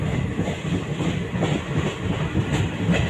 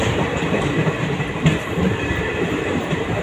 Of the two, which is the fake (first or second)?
second